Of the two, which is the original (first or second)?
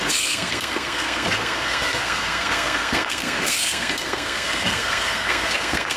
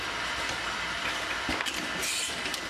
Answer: second